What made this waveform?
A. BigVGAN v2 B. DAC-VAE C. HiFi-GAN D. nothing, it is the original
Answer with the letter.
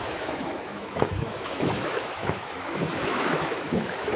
B